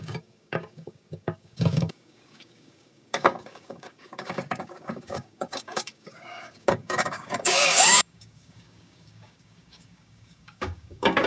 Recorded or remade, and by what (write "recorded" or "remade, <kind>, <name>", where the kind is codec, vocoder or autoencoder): remade, codec, DAC